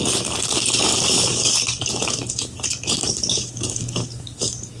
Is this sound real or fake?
fake